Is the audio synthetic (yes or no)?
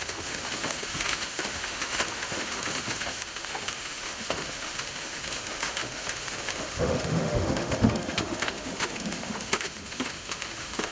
yes